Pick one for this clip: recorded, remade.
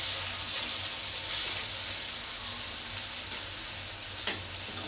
recorded